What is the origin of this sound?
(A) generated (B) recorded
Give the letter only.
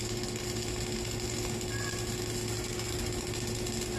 B